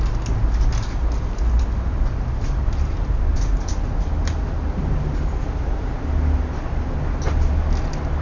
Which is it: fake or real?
real